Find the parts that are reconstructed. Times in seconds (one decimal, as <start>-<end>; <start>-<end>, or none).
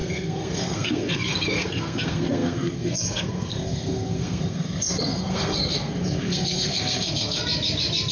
0.0-7.4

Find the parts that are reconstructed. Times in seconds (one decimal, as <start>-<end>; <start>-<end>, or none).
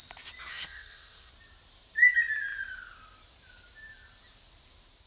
0.5-1.3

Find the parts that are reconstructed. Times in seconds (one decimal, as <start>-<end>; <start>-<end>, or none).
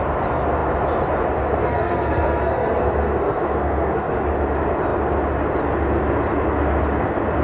1.6-4.1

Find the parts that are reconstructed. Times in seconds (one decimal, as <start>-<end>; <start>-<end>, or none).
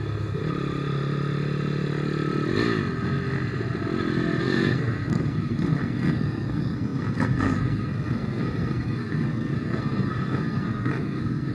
0.0-0.4; 4.4-11.5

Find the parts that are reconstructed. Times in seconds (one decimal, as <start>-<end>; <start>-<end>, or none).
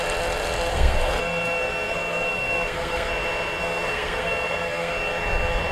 0.7-3.1; 3.6-4.9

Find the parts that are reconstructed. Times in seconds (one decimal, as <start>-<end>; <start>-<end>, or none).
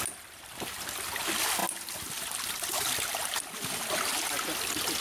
none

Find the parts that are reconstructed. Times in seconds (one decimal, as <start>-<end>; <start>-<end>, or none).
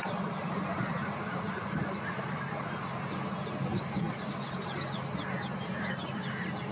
none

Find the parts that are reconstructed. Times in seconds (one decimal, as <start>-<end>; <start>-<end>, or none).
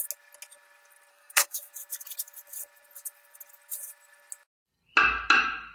1.1-1.7